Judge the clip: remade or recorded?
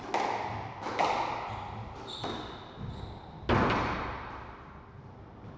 recorded